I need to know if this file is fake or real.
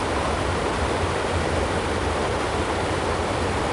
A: real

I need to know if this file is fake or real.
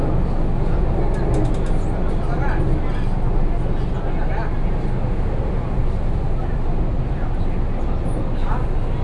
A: real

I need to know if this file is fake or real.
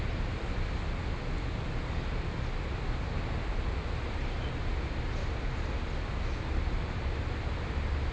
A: real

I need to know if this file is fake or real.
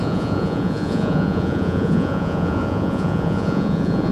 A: fake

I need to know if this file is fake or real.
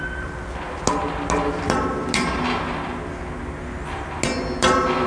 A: real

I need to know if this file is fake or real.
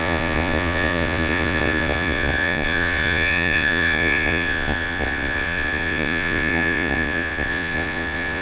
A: fake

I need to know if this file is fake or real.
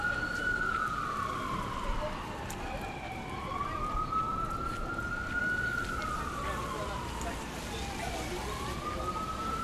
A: real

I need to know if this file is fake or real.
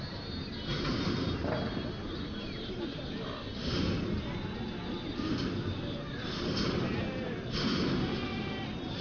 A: real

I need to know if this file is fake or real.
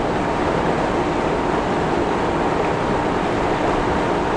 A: real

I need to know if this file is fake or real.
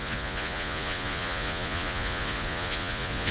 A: fake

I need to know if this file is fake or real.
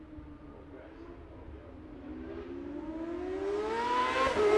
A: real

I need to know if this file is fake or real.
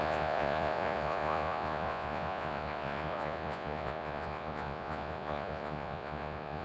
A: fake